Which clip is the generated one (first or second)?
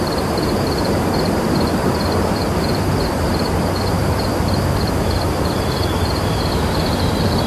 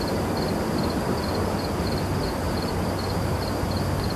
first